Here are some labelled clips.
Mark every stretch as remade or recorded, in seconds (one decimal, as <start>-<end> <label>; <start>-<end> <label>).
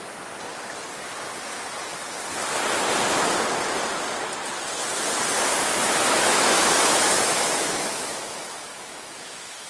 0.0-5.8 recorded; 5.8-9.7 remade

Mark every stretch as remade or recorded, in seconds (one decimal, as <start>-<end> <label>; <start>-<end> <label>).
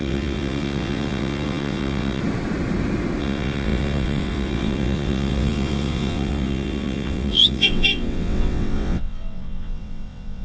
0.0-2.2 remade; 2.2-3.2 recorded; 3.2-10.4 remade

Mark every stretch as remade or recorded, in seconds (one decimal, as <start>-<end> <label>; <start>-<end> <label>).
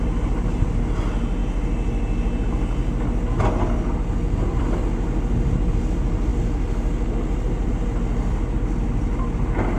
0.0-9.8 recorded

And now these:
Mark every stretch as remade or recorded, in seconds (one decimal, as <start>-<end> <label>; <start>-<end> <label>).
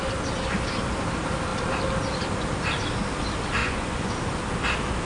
0.0-3.6 recorded; 3.6-4.1 remade; 4.1-5.0 recorded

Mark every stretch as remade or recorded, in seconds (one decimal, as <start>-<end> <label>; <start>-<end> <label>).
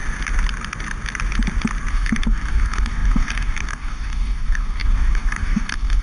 0.0-1.9 recorded; 1.9-6.0 remade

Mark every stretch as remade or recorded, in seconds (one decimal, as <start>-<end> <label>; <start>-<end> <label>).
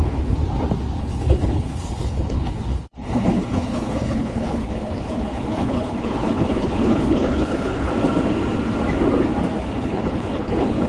0.0-0.4 remade; 0.4-1.0 recorded; 1.0-7.9 remade; 7.9-9.6 recorded; 9.6-10.9 remade